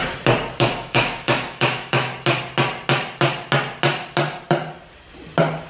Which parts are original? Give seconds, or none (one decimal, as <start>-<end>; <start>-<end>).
0.0-0.6; 2.1-5.7